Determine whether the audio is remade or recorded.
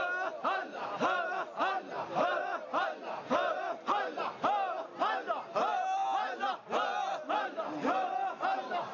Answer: recorded